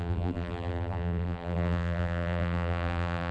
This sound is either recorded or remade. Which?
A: remade